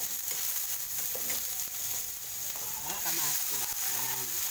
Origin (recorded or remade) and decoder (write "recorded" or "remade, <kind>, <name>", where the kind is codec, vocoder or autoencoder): recorded